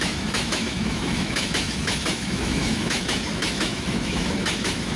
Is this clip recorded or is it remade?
remade